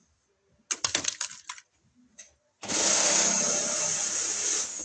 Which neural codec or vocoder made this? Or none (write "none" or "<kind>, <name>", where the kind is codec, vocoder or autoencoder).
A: none